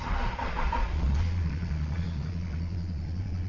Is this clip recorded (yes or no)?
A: no